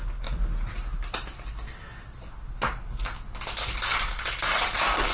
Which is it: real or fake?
real